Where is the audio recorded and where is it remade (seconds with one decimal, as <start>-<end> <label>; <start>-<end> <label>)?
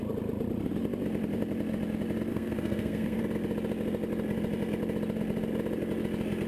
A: 0.0-2.3 recorded; 2.3-3.2 remade; 3.2-6.5 recorded